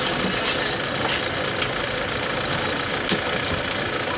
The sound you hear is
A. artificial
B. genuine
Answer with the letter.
B